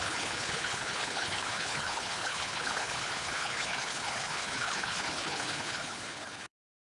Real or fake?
fake